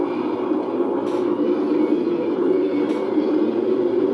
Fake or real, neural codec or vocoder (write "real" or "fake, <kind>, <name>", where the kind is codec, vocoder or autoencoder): real